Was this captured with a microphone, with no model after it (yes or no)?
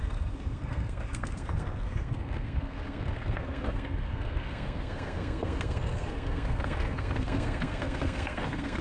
no